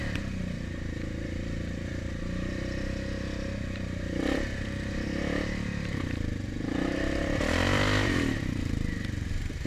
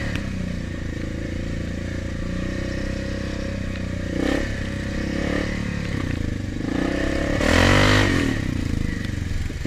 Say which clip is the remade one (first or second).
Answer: first